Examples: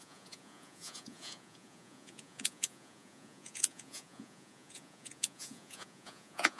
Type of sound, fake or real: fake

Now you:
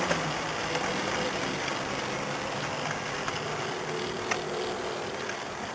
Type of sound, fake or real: real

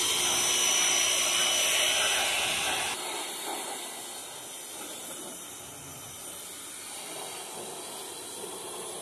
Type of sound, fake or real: real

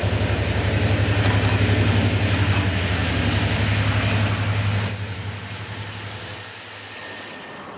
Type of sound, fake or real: real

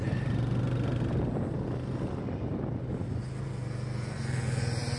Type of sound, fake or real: real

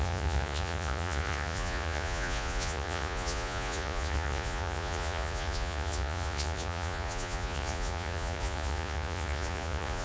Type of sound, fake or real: fake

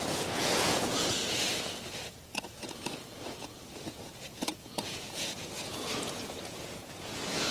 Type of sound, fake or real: fake